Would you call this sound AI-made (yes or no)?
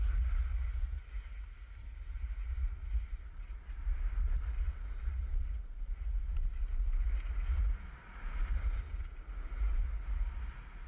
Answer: no